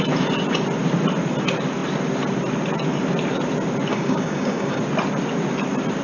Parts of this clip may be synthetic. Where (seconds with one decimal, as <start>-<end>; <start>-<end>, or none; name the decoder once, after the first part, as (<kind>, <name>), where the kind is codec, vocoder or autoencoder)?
3.9-4.8 (codec, DAC)